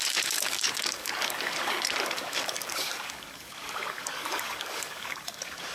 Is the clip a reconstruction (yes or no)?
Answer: yes